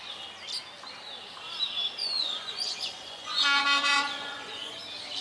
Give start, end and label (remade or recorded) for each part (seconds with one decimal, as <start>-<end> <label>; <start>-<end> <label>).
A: 0.0-2.0 recorded; 2.0-4.8 remade; 4.8-5.2 recorded